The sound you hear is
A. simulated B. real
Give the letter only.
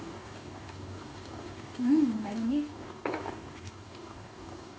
A